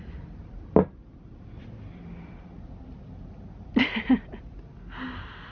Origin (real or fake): real